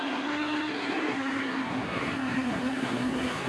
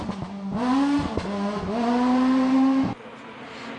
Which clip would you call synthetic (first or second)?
first